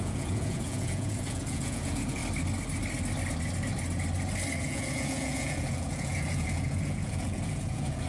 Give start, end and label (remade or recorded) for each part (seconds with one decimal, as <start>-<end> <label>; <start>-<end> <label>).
0.0-2.2 remade; 2.2-4.6 recorded; 4.6-8.1 remade

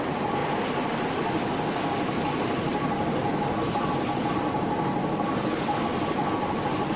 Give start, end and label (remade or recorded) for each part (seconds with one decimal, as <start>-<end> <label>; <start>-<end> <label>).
0.0-7.0 recorded

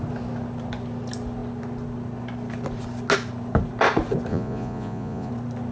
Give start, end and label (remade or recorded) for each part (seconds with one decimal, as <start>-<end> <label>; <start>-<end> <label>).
0.0-4.3 recorded; 4.3-5.3 remade; 5.3-5.7 recorded

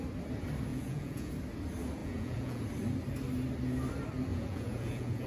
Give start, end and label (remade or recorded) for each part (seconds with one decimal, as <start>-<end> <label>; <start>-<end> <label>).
0.0-0.7 recorded; 0.7-1.3 remade; 1.3-2.0 recorded; 2.0-2.6 remade; 2.6-4.3 recorded; 4.3-5.3 remade